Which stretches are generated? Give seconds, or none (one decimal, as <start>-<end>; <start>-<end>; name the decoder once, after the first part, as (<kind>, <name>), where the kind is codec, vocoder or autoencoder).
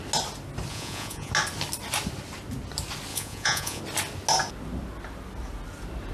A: 0.7-1.3 (vocoder, Vocos); 3.1-3.8